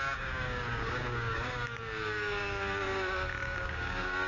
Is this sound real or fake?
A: fake